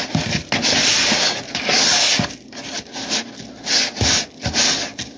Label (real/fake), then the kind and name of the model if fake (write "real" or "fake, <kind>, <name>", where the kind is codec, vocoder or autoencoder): real